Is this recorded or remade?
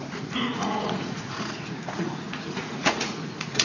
remade